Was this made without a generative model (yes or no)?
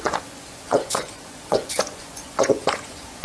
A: no